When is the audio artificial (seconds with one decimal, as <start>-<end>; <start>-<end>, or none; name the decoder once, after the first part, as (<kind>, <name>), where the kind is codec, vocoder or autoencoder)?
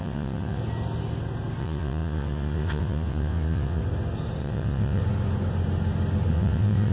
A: 0.0-0.6 (vocoder, WaveNeXt); 1.6-3.8; 4.4-5.0; 6.3-6.9